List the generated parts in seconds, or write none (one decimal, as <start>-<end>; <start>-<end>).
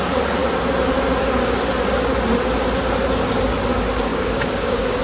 4.1-5.0